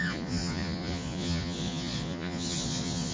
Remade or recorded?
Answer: remade